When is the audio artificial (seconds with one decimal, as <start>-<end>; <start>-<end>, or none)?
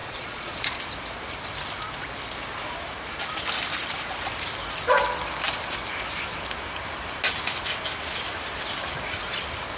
0.0-0.8